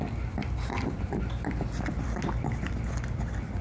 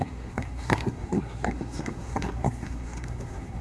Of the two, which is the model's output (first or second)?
second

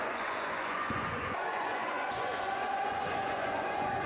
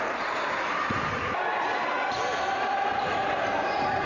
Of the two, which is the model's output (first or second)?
first